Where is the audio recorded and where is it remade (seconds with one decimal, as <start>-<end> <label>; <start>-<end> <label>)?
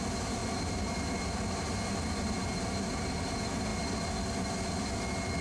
0.0-5.4 recorded